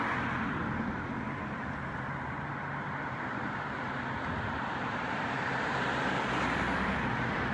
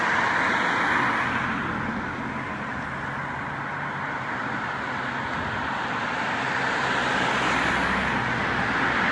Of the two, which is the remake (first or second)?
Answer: first